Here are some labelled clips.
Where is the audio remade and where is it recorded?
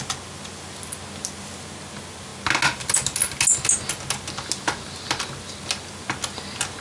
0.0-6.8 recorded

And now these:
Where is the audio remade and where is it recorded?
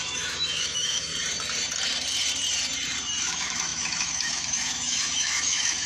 0.0-1.1 remade; 1.1-3.2 recorded; 3.2-5.9 remade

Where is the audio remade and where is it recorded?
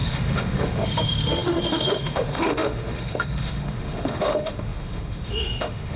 0.0-6.0 remade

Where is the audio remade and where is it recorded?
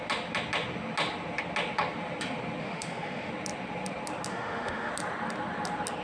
0.0-2.6 recorded; 2.6-3.3 remade; 3.3-4.3 recorded; 4.3-4.9 remade; 4.9-6.0 recorded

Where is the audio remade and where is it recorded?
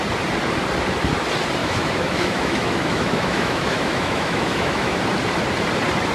0.0-1.6 recorded; 1.6-5.0 remade; 5.0-6.1 recorded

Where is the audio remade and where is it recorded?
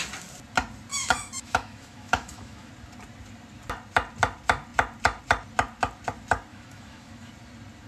0.0-0.9 recorded; 0.9-2.7 remade; 2.7-6.5 recorded; 6.5-7.3 remade; 7.3-7.9 recorded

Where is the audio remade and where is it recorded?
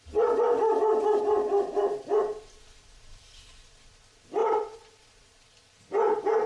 0.0-6.5 recorded